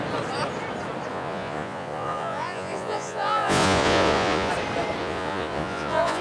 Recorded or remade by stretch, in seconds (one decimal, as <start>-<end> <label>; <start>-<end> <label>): 0.0-1.1 recorded; 1.1-4.5 remade; 4.5-5.0 recorded; 5.0-6.2 remade